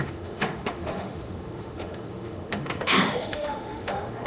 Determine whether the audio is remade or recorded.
remade